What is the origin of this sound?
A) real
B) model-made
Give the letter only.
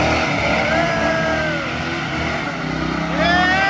A